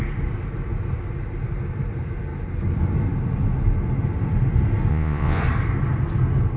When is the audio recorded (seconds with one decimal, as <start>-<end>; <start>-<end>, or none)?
0.0-4.9; 5.4-6.6